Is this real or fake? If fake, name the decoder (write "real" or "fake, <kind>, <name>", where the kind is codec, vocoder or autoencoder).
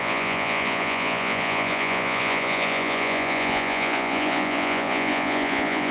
fake, vocoder, Vocos